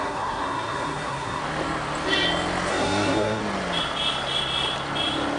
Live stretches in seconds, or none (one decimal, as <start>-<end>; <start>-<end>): 1.4-2.7; 3.4-5.4